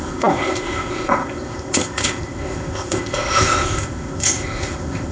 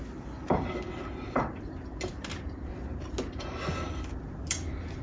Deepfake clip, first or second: first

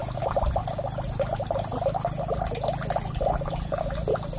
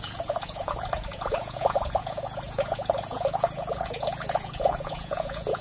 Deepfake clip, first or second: second